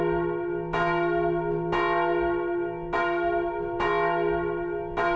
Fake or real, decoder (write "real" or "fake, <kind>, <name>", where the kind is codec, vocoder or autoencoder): real